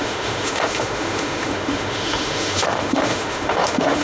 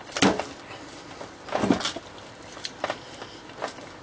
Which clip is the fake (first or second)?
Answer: first